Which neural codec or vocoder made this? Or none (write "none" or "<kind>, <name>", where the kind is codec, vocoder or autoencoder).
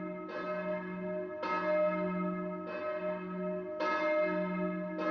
none